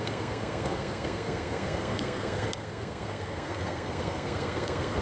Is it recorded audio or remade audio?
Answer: remade